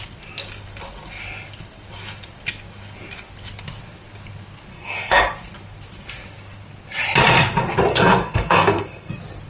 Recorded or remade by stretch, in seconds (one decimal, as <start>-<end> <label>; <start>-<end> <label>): 0.0-4.7 recorded; 4.7-5.2 remade; 5.2-7.9 recorded; 7.9-9.1 remade; 9.1-9.5 recorded